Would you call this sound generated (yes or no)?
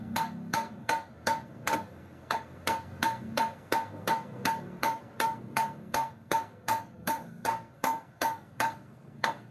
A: yes